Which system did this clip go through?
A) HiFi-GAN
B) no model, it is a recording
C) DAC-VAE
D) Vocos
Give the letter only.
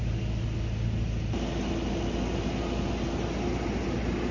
B